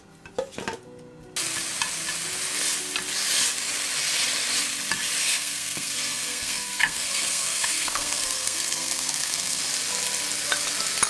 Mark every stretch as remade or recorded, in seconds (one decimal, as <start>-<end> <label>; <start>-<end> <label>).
0.0-5.2 recorded; 5.2-9.6 remade; 9.6-11.1 recorded